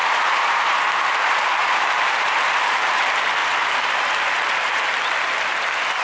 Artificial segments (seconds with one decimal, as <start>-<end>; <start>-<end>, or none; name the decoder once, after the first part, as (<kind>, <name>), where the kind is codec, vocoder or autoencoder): 0.0-2.9 (vocoder, BigVGAN v2); 3.4-4.8